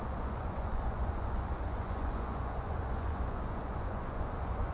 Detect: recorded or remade remade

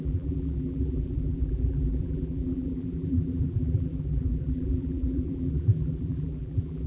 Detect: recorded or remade remade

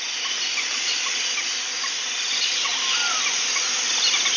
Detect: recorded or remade recorded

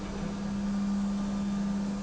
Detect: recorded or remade recorded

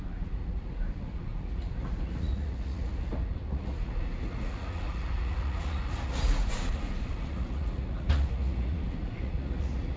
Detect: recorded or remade remade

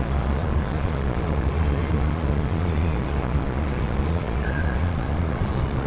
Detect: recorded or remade remade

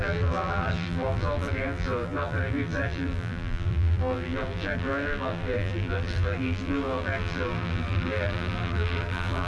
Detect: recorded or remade remade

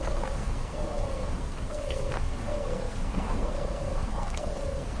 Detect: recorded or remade remade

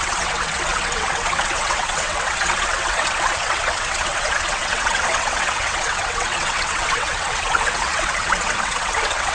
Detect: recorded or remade remade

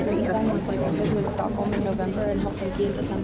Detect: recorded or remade recorded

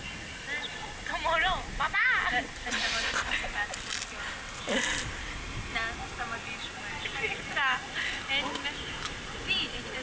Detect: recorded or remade recorded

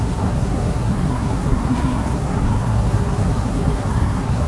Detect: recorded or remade remade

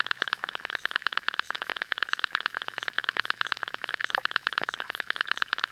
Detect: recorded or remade remade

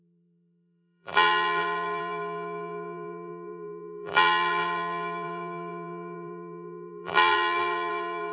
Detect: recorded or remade remade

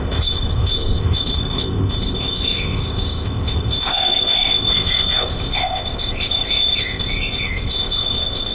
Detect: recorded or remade remade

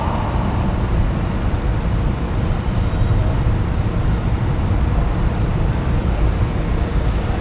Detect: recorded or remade remade